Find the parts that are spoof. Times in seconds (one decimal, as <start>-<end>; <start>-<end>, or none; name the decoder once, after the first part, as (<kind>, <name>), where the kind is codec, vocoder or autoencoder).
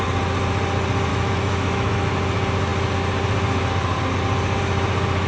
1.1-2.1 (autoencoder, DAC-VAE)